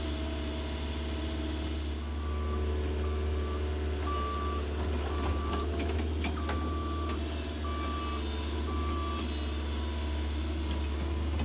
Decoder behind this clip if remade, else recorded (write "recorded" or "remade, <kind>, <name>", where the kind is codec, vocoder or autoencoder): recorded